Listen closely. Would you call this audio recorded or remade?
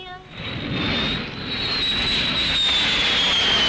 recorded